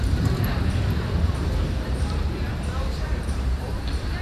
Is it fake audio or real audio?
fake